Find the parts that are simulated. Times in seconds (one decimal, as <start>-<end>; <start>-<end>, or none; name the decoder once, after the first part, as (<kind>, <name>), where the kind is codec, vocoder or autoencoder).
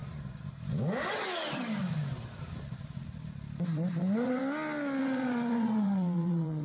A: 4.0-4.4 (vocoder, WaveNeXt); 5.0-6.6